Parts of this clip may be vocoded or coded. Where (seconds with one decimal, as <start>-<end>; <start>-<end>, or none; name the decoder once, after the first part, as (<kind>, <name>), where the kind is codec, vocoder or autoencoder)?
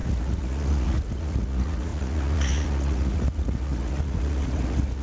0.0-5.0 (vocoder, Vocos)